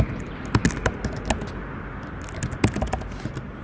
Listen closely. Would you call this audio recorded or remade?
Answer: recorded